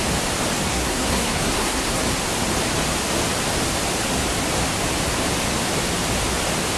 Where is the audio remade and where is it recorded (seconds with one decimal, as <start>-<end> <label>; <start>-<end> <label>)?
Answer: 0.0-0.7 recorded; 0.7-2.0 remade; 2.0-6.8 recorded